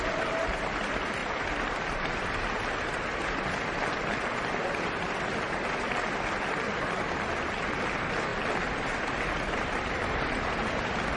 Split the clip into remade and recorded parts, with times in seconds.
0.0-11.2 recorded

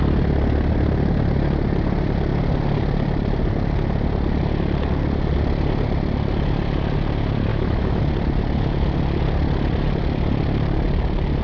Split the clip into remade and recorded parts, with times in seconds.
0.0-7.5 recorded; 7.5-8.0 remade; 8.0-11.4 recorded

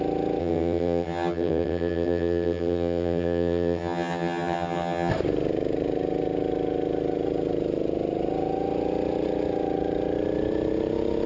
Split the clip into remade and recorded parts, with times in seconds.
0.0-0.4 recorded; 0.4-5.1 remade; 5.1-11.3 recorded